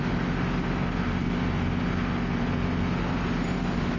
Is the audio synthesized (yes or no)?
no